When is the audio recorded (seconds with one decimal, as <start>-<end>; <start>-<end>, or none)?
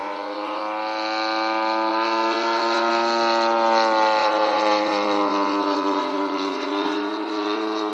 0.6-1.9; 2.9-4.2